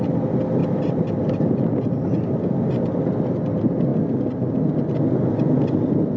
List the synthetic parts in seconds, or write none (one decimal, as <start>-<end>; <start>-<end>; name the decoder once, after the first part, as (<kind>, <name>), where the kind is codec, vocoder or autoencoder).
none